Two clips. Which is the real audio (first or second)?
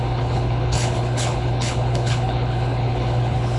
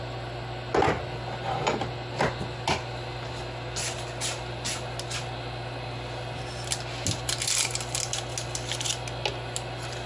second